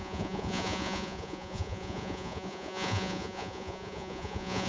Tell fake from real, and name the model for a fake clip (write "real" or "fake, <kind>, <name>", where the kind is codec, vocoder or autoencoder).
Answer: fake, vocoder, Vocos